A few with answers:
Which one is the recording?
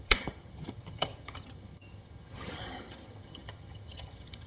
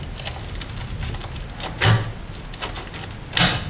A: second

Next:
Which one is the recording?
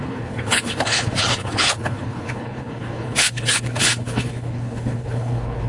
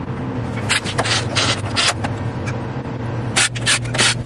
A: second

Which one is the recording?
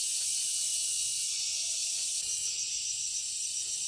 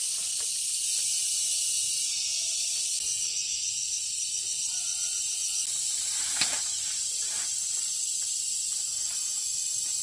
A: second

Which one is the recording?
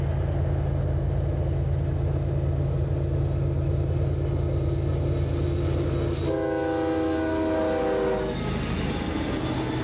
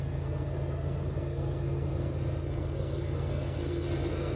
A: first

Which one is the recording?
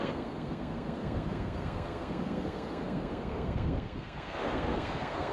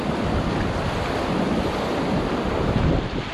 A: second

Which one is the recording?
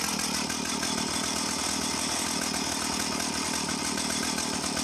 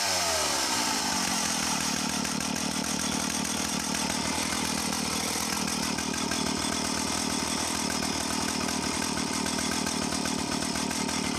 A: first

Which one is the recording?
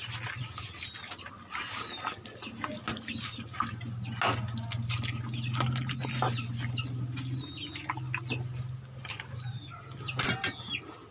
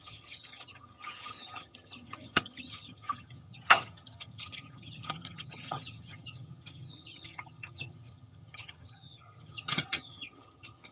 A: first